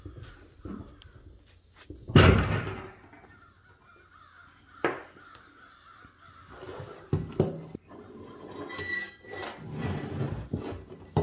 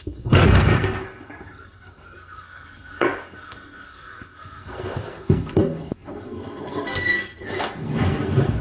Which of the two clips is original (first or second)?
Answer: first